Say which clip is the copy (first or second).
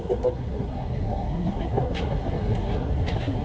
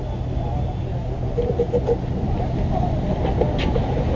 first